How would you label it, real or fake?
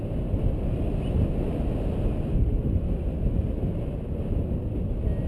real